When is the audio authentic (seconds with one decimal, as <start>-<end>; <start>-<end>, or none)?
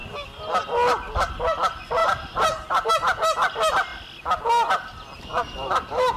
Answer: 0.0-2.0; 2.9-5.3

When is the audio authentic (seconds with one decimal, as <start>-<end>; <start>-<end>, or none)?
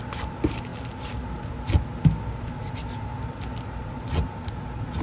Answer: 0.0-5.0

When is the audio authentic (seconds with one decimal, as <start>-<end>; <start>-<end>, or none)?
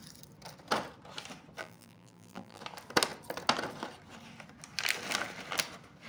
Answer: 0.0-1.6; 2.6-6.1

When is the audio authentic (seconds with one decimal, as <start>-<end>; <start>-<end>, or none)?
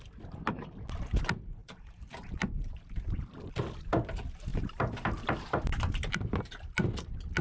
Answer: 0.0-1.6; 3.5-4.5; 6.1-7.4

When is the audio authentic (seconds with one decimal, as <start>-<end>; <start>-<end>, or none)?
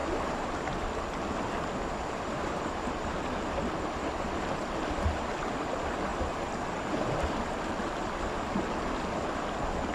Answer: 0.6-2.0; 3.6-9.9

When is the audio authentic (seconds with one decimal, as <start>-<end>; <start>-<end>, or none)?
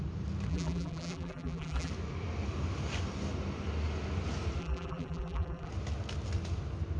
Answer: 0.0-0.5; 1.9-4.6; 5.7-7.0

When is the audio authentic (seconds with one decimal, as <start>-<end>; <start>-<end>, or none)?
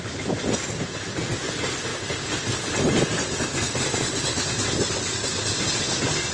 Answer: 0.0-6.3